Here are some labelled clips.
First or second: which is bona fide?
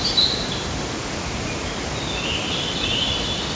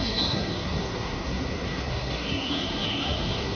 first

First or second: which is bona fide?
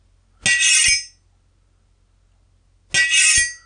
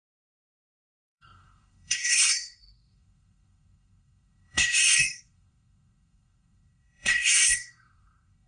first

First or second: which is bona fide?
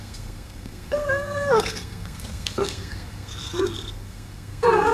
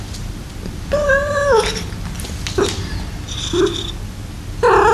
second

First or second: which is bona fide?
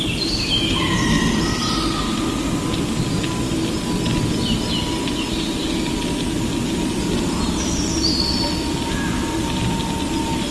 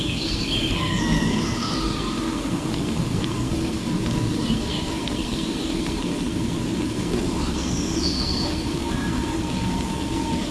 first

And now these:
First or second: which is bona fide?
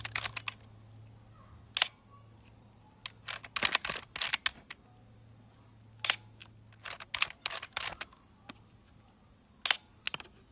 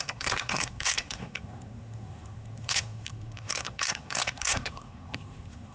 first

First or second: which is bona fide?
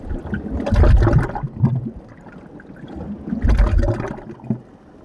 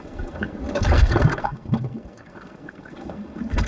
first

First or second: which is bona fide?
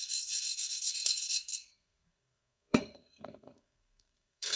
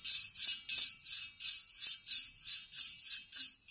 second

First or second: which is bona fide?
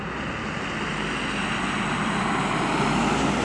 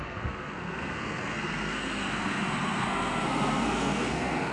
first